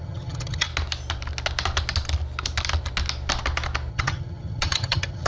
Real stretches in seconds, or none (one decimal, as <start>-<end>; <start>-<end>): 0.7-3.9

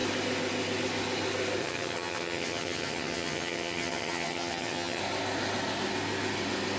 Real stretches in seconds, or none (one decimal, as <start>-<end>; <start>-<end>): 0.0-1.6; 5.0-6.8